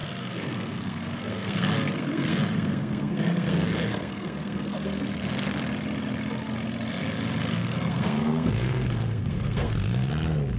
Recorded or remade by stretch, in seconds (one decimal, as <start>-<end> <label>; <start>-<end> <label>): 0.0-5.0 remade; 5.0-7.5 recorded; 7.5-10.1 remade; 10.1-10.6 recorded